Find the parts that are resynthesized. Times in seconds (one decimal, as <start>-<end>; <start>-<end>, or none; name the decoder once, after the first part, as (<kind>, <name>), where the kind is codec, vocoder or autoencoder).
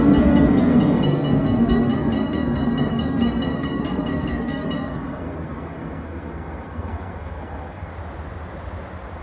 0.0-7.9 (codec, SNAC)